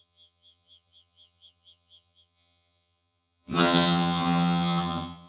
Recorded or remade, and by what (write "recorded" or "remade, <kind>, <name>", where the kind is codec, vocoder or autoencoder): remade, vocoder, HiFi-GAN